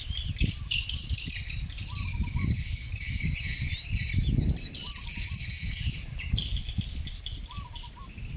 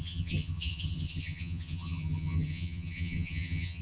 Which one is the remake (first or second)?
second